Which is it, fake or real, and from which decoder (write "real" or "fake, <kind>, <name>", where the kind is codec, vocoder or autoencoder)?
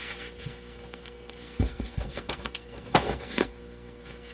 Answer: fake, codec, SNAC